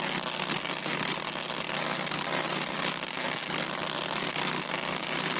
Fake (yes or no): no